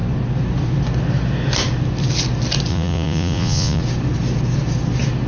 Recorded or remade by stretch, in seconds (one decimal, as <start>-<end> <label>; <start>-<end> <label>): 0.0-2.7 recorded; 2.7-3.8 remade; 3.8-5.3 recorded